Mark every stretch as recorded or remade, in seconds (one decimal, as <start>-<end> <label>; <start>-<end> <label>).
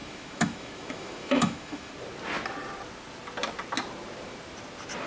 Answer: 0.0-1.9 remade; 1.9-5.1 recorded